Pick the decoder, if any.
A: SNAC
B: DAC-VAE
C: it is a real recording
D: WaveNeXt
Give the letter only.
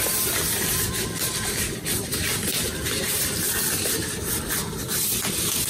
C